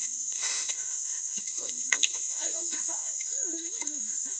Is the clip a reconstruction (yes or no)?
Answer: yes